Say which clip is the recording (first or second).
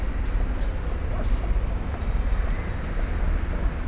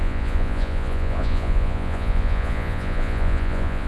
first